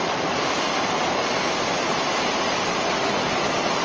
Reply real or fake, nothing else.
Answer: fake